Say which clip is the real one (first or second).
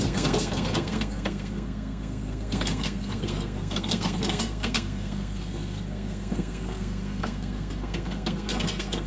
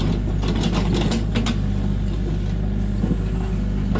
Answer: second